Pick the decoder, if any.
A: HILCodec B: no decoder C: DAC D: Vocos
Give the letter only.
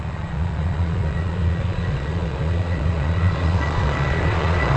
D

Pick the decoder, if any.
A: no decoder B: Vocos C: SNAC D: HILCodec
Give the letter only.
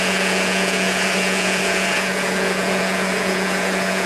B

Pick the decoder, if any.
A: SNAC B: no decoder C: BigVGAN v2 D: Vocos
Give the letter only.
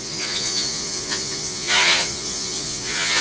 D